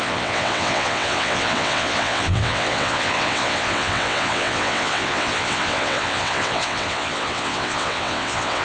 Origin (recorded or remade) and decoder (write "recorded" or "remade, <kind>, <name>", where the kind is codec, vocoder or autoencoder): remade, vocoder, WaveNeXt